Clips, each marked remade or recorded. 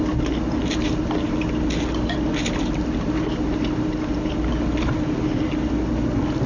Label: recorded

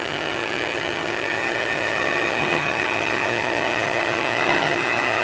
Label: remade